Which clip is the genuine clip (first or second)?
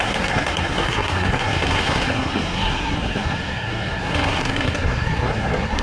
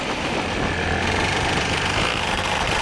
second